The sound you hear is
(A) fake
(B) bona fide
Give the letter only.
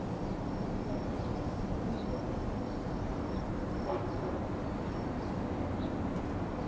B